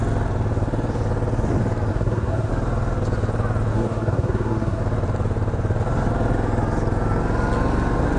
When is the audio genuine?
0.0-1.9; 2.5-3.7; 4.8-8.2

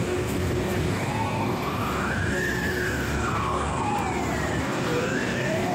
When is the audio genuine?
3.9-4.6

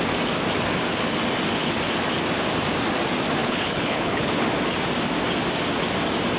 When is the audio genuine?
0.0-3.4; 4.4-6.4

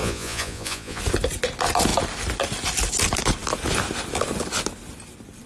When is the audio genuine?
1.0-5.5